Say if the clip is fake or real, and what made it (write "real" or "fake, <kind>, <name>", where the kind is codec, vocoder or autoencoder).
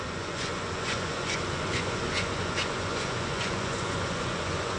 fake, vocoder, Vocos